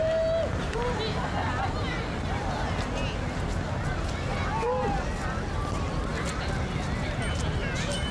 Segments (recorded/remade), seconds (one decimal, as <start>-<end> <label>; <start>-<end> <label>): 0.0-8.1 recorded

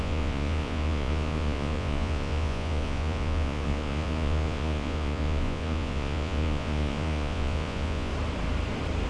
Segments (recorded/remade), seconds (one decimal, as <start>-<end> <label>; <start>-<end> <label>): 0.0-8.1 remade; 8.1-9.1 recorded

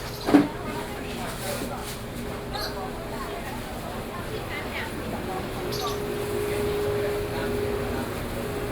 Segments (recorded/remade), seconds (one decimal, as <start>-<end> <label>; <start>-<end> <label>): 0.0-8.7 recorded

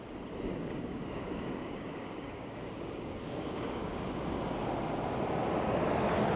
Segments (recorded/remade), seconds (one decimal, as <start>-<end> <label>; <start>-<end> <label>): 0.0-0.5 recorded; 0.5-4.1 remade; 4.1-6.4 recorded